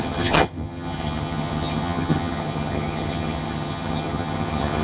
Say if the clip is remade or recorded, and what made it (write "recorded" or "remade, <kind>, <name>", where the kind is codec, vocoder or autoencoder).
remade, vocoder, HiFi-GAN